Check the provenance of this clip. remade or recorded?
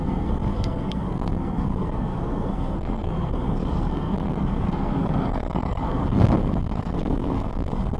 remade